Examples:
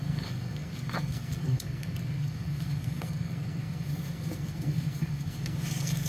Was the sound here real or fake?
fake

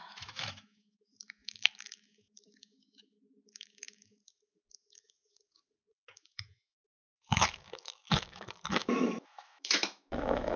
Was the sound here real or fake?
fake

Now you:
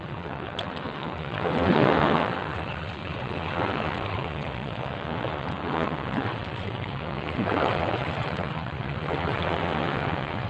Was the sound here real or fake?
fake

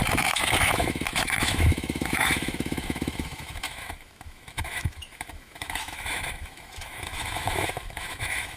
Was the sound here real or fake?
fake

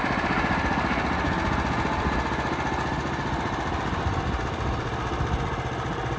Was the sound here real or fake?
real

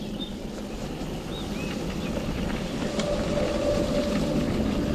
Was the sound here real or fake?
real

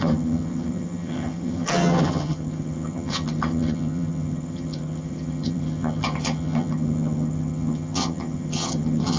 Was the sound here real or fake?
fake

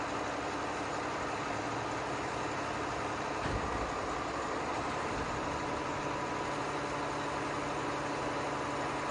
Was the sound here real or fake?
real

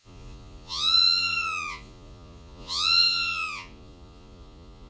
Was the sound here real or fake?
fake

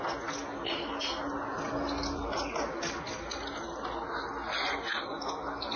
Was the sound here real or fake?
real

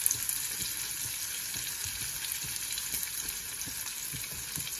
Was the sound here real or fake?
real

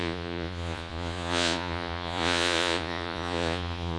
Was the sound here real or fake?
fake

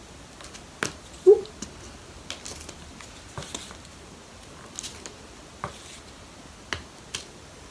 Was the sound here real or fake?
real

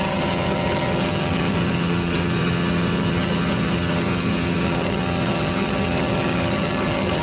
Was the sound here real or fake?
fake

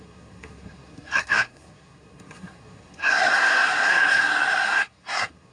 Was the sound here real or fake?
fake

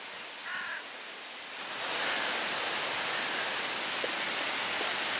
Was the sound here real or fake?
real